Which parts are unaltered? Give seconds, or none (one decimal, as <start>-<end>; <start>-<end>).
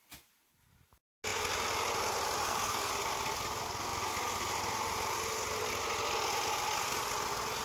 0.0-2.4; 2.9-7.6